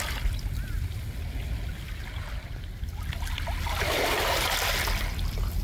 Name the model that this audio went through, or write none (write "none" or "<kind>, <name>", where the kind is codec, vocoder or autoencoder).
none